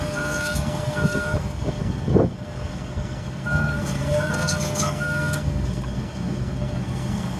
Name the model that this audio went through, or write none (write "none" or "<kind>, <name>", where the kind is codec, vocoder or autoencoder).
codec, SNAC